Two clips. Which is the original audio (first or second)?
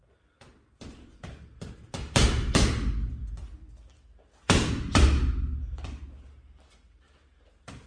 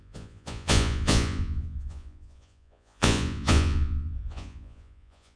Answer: first